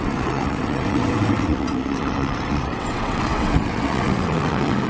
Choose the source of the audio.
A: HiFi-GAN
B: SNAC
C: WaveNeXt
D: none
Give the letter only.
C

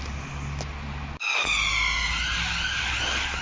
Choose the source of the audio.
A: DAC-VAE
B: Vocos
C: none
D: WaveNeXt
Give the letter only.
C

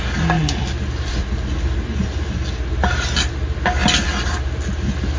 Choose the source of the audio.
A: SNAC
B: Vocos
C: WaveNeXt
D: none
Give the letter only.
D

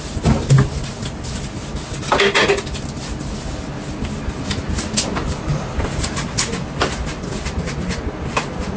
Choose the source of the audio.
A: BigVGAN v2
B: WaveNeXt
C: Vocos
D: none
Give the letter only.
D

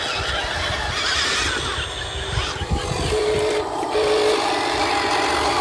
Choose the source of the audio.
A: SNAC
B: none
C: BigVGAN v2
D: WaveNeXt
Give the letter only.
B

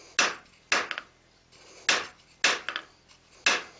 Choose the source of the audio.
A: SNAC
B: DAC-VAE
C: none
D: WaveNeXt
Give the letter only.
C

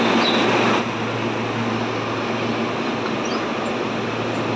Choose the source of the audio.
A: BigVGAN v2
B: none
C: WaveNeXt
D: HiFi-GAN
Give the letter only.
B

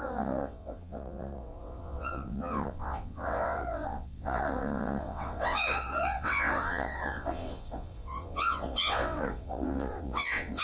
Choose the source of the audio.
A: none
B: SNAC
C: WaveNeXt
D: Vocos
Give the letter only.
C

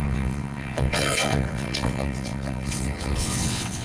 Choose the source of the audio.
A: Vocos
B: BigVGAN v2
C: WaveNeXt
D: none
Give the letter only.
C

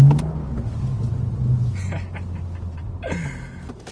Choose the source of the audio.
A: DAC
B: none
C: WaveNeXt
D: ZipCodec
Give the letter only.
B